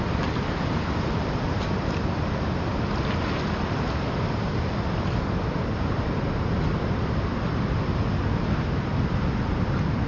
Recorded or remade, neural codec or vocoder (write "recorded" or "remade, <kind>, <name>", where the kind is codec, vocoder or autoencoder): recorded